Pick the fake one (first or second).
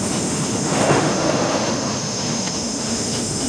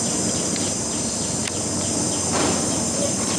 first